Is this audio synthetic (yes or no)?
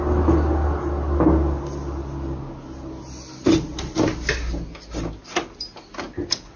no